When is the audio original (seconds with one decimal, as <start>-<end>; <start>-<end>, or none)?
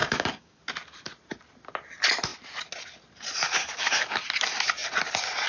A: 0.6-3.6; 4.2-5.5